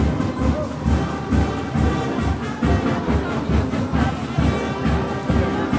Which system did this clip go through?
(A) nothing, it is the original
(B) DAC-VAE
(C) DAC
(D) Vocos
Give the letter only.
A